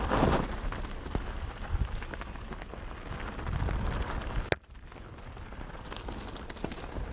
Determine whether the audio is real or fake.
real